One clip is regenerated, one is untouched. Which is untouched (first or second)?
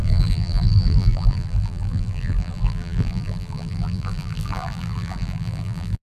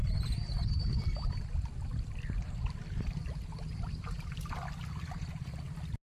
second